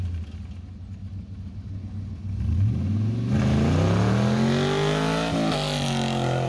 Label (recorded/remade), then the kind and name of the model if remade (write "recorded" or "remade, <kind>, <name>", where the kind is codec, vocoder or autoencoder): recorded